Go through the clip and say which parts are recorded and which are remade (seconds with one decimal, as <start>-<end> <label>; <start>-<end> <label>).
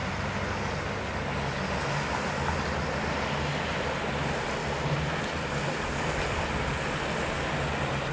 0.0-8.1 recorded